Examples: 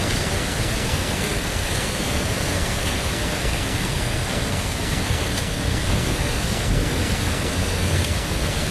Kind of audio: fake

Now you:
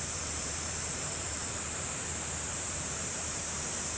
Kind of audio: fake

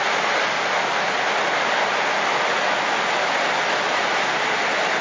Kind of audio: real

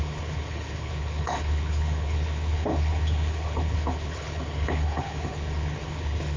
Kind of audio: fake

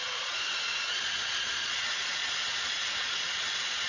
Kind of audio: fake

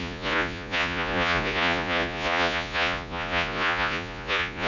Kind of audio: fake